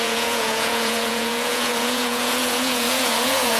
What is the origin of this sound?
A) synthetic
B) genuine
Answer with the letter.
A